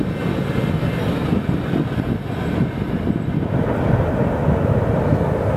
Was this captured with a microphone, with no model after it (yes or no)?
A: yes